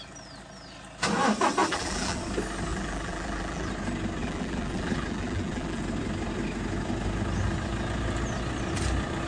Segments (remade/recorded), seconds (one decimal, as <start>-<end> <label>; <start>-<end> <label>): 0.0-1.6 recorded; 1.6-2.2 remade; 2.2-2.7 recorded; 2.7-3.7 remade; 3.7-4.2 recorded; 4.2-5.8 remade; 5.8-9.3 recorded